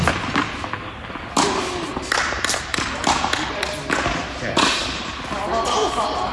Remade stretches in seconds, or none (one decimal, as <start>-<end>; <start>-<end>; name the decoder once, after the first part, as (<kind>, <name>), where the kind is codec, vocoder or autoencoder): none

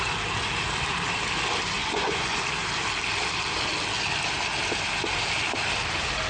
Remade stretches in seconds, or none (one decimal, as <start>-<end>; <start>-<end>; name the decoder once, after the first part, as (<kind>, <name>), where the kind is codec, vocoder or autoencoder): 1.8-2.4 (vocoder, Vocos)

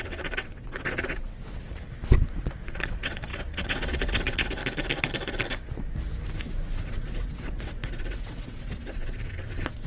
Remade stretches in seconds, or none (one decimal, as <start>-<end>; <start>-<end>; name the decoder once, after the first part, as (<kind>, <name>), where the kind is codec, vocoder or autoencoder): 0.0-1.6 (vocoder, WaveNeXt); 2.4-4.6; 6.8-9.9

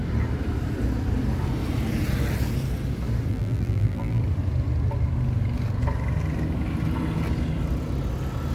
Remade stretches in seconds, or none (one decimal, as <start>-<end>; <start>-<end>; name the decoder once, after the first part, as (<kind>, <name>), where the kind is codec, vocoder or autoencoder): 3.3-4.2 (vocoder, BigVGAN v2)

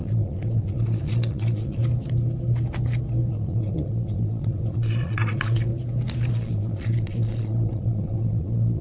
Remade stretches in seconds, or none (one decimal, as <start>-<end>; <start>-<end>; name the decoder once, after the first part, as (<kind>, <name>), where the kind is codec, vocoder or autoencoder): 0.0-1.8 (vocoder, Vocos); 3.3-5.7; 6.3-8.8

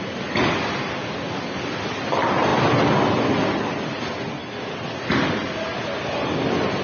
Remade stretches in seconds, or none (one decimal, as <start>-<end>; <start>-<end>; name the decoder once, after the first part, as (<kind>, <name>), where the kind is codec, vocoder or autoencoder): none

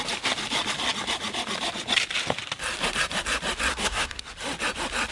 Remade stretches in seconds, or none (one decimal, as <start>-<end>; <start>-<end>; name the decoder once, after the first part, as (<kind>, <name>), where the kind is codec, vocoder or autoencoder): 3.7-4.3 (codec, SNAC)

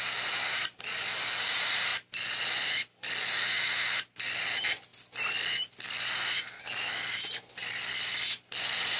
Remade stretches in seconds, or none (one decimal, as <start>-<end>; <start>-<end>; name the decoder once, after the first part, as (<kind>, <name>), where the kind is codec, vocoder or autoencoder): none